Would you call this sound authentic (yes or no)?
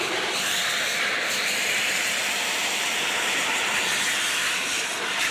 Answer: no